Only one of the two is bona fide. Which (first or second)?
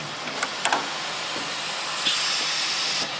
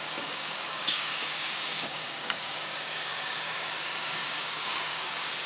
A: first